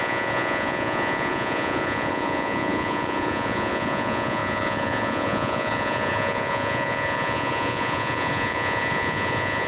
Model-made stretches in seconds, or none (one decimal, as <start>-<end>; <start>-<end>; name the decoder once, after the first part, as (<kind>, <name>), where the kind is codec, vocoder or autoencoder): 0.0-9.7 (vocoder, Vocos)